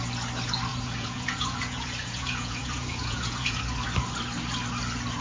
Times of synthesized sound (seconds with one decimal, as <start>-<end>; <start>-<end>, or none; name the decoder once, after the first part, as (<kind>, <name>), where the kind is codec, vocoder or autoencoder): 0.7-3.6 (vocoder, Vocos)